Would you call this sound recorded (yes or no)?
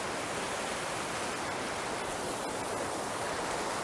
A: yes